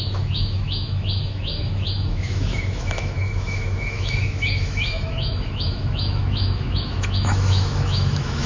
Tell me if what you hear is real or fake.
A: fake